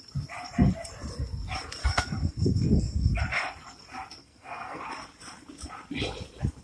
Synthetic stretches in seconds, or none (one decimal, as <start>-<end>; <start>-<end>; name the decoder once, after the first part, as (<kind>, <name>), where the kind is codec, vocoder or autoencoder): 1.8-3.2 (codec, SNAC); 4.2-4.8